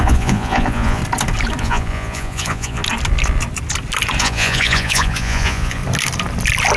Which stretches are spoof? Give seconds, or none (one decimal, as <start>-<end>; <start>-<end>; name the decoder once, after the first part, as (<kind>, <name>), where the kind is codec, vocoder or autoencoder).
0.0-1.0 (vocoder, Vocos); 1.6-2.8; 4.2-5.8

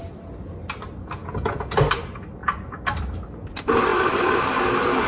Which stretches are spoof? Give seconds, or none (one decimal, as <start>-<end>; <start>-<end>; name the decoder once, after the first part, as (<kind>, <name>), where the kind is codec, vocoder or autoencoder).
1.2-1.8 (vocoder, Vocos)

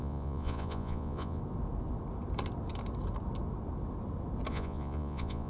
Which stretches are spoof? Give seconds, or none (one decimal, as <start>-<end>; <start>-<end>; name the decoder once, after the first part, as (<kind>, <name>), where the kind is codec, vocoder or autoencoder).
0.0-1.4 (vocoder, Vocos); 4.5-5.5

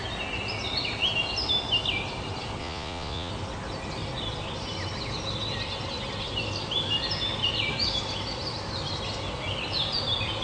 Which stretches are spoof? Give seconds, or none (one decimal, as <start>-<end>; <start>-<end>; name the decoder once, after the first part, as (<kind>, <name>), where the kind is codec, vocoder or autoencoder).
2.6-3.3 (vocoder, Vocos)

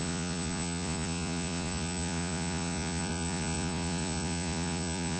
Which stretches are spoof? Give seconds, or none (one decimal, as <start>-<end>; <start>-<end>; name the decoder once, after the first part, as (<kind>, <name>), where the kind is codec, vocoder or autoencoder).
0.0-5.2 (vocoder, Vocos)